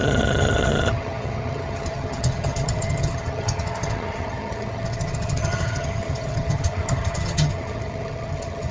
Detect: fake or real fake